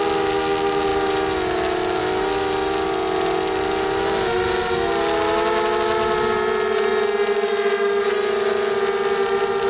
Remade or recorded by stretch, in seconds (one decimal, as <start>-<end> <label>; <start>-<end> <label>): 0.0-9.7 recorded